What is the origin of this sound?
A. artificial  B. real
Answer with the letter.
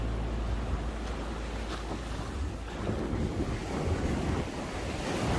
B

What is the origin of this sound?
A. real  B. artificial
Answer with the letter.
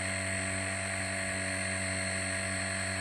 A